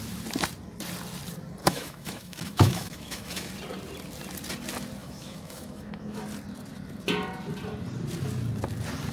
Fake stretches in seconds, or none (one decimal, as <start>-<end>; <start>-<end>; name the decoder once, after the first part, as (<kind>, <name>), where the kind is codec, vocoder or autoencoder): 1.6-3.5 (autoencoder, DAC-VAE); 5.0-6.2